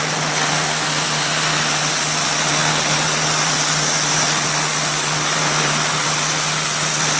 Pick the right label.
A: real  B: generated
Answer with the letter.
A